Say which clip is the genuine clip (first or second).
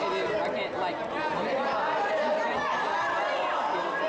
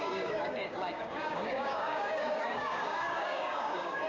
first